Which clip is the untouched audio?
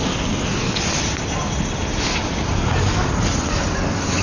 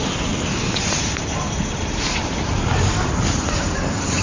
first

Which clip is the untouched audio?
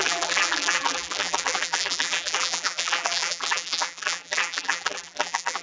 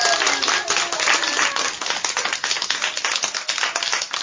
second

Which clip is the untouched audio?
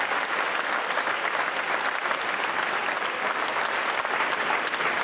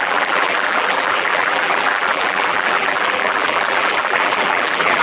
first